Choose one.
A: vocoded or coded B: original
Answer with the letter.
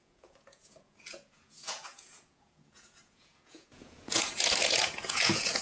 A